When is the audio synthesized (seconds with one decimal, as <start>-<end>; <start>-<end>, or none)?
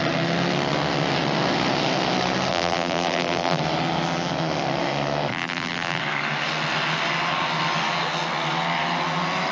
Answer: 2.5-3.6; 5.3-6.0